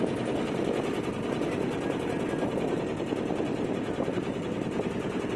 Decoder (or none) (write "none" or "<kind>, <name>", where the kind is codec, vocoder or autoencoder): none